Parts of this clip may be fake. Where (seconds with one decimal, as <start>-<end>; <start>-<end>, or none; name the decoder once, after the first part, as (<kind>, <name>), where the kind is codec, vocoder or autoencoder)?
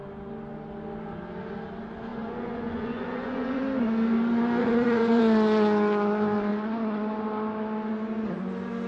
2.1-3.6 (vocoder, Vocos); 4.6-5.2